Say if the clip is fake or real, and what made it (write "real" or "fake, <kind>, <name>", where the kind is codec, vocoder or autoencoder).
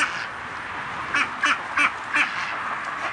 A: real